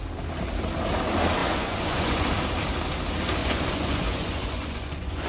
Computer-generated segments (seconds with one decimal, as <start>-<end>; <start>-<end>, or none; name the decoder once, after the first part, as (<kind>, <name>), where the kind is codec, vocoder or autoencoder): 1.4-2.3 (vocoder, Vocos); 3.4-5.3